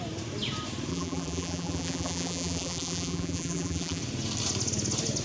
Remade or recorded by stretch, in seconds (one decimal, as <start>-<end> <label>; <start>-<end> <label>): 0.0-0.9 recorded; 0.9-4.0 remade; 4.0-5.2 recorded

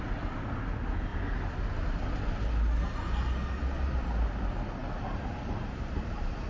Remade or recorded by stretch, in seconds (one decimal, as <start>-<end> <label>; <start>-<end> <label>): 0.0-6.5 recorded